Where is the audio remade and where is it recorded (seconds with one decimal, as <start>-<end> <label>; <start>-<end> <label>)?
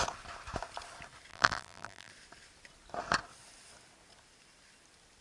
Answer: 0.0-1.3 recorded; 1.3-2.1 remade; 2.1-5.2 recorded